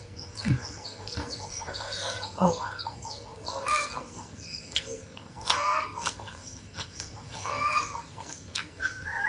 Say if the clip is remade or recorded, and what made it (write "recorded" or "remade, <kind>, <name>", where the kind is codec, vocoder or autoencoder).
remade, codec, SNAC